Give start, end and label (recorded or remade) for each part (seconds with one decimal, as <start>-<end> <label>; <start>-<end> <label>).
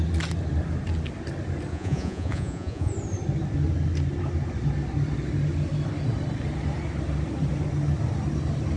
0.0-1.7 recorded; 1.7-2.9 remade; 2.9-8.8 recorded